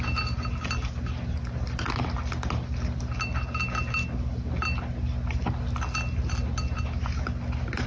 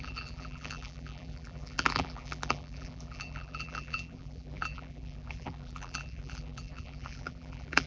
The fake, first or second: second